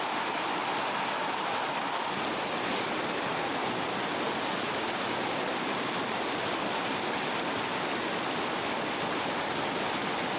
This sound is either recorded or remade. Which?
recorded